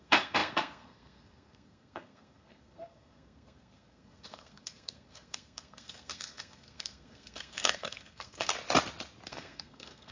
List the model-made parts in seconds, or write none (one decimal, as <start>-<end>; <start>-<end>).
0.0-8.5; 9.3-10.1